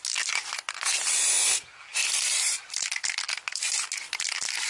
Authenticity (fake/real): real